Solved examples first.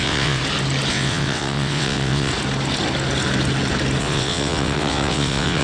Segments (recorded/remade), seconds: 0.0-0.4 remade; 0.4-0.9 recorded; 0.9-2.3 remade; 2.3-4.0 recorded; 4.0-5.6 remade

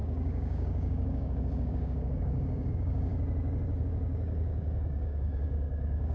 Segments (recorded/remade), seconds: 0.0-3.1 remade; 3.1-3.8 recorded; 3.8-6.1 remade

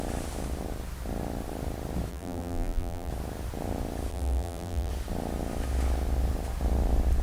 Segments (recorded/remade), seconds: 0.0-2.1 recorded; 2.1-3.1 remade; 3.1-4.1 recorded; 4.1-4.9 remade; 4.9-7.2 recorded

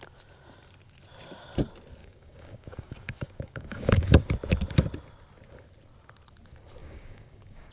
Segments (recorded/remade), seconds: 0.0-2.0 recorded; 2.0-4.3 remade; 4.3-6.8 recorded; 6.8-7.7 remade

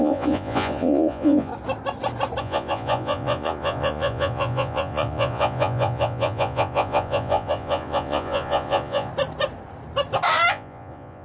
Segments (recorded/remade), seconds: 0.0-1.5 remade; 1.5-2.4 recorded; 2.4-9.1 remade; 9.1-10.5 recorded; 10.5-11.2 remade

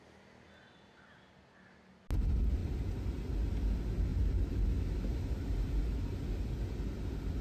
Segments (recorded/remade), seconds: 0.0-4.1 recorded; 4.1-4.6 remade; 4.6-5.1 recorded; 5.1-5.9 remade; 5.9-7.4 recorded

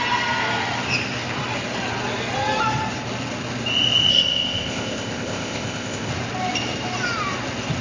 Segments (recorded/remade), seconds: 0.0-4.1 recorded; 4.1-6.1 remade; 6.1-7.8 recorded

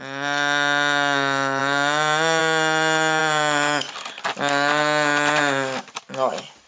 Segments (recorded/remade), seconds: 0.0-6.7 recorded